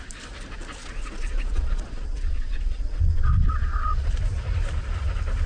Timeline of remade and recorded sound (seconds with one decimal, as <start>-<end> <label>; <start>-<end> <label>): 0.0-0.8 recorded; 0.8-4.1 remade; 4.1-5.5 recorded